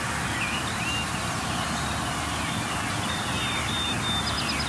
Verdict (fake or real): real